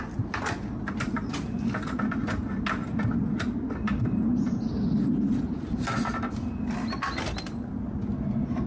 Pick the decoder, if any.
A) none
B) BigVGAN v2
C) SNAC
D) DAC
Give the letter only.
A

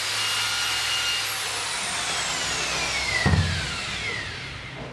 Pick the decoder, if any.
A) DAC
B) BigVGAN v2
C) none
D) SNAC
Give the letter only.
C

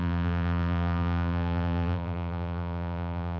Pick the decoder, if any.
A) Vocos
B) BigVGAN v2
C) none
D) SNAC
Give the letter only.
B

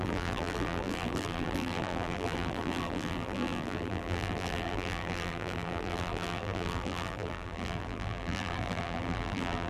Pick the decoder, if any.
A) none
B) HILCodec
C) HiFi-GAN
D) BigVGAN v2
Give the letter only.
D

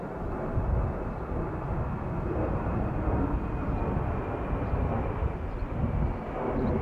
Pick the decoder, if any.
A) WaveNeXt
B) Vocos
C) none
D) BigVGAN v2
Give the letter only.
C